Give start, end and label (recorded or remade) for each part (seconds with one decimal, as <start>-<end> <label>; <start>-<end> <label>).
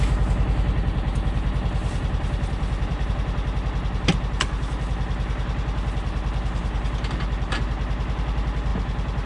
0.0-1.8 recorded; 1.8-3.1 remade; 3.1-9.3 recorded